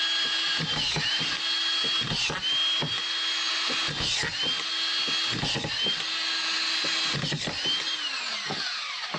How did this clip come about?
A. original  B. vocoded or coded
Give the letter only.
A